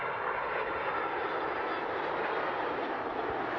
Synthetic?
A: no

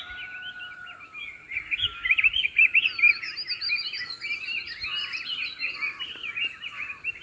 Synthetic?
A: no